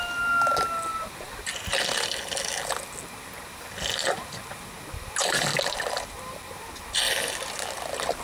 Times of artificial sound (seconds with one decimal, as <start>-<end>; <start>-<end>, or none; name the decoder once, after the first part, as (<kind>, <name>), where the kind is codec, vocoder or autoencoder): none